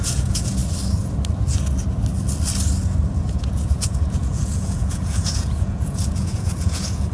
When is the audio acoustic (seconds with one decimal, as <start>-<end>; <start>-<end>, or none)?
0.6-3.2